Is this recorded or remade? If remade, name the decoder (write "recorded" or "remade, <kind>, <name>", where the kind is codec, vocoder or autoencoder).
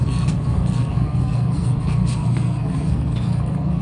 remade, codec, SNAC